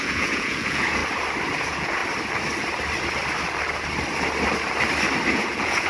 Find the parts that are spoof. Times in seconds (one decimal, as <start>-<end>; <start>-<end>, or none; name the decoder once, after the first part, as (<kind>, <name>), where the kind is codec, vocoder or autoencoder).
0.0-1.0 (vocoder, Vocos); 1.6-2.0; 5.3-5.9